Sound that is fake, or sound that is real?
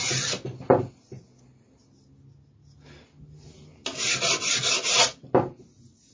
real